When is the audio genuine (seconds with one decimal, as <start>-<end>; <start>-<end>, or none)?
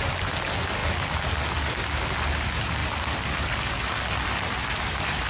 0.0-5.3